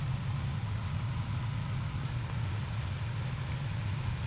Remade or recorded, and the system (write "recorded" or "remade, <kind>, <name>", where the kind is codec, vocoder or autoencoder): recorded